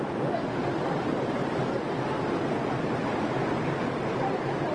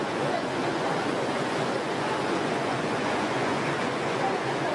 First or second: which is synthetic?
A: second